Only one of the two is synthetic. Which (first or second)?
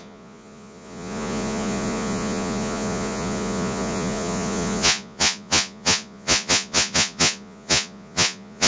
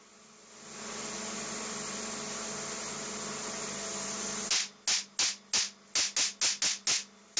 first